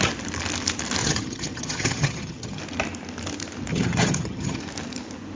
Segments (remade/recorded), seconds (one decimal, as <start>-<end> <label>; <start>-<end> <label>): 0.0-1.0 recorded; 1.0-2.6 remade; 2.6-3.7 recorded; 3.7-4.6 remade; 4.6-5.4 recorded

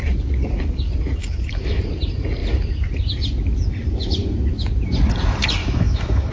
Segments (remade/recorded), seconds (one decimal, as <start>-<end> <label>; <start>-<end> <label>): 0.0-1.2 recorded; 1.2-1.8 remade; 1.8-5.6 recorded; 5.6-6.3 remade

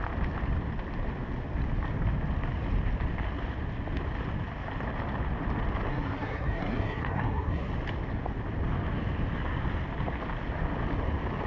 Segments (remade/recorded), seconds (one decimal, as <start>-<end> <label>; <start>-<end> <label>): 0.0-5.9 recorded; 5.9-7.7 remade; 7.7-11.5 recorded

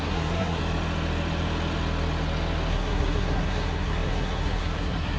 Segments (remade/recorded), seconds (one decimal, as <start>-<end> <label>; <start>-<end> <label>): 0.0-0.6 remade; 0.6-2.7 recorded; 2.7-5.2 remade

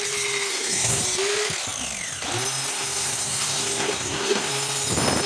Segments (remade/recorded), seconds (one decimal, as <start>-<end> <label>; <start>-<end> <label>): 0.0-0.5 recorded; 0.5-1.0 remade; 1.0-2.7 recorded; 2.7-4.5 remade; 4.5-5.3 recorded

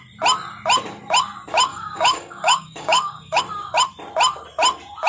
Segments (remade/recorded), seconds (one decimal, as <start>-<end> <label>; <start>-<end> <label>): 0.0-1.7 recorded; 1.7-3.4 remade; 3.4-5.1 recorded

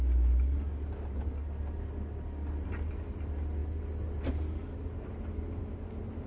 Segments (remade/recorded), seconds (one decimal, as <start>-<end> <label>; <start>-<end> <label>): 0.0-6.3 recorded

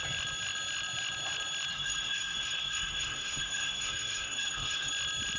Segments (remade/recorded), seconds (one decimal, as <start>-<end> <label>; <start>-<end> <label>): 0.0-1.7 recorded; 1.7-4.9 remade; 4.9-5.4 recorded